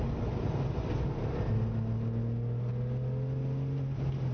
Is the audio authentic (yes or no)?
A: yes